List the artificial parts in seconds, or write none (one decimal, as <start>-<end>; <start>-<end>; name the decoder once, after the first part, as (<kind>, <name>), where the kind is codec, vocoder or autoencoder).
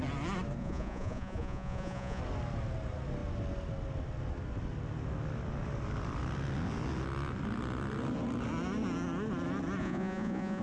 0.6-2.2 (vocoder, Vocos); 9.8-10.6